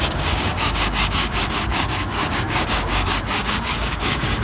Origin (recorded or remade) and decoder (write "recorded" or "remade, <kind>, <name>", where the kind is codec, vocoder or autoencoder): remade, codec, DAC